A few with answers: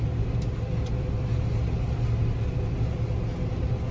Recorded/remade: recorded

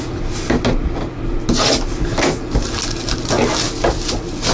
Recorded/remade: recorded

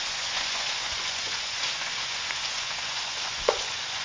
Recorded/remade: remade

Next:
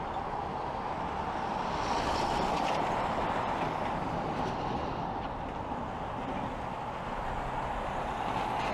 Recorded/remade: recorded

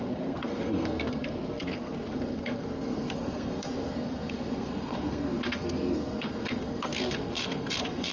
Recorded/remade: remade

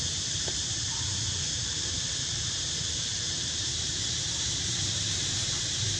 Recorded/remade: remade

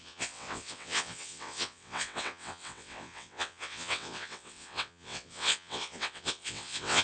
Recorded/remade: remade